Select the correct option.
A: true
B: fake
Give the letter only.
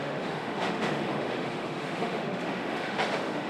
B